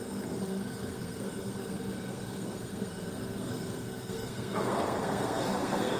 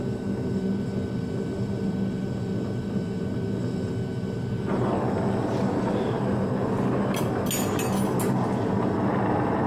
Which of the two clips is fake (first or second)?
first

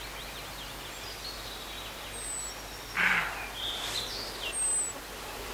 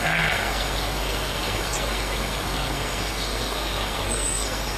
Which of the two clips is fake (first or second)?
second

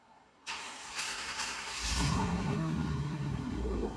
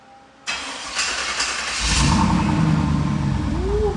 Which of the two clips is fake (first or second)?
first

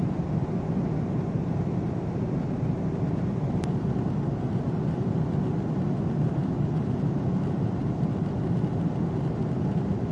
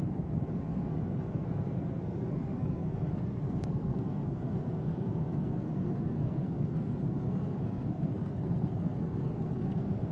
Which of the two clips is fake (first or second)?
second